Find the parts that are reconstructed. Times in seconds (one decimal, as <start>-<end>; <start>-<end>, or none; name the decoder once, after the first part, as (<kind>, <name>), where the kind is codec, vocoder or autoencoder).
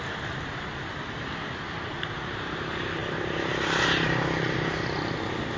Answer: none